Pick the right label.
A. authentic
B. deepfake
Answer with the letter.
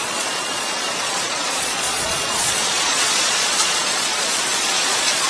B